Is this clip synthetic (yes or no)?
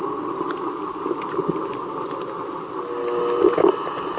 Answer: no